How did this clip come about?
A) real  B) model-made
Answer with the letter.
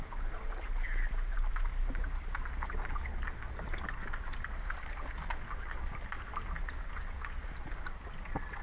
A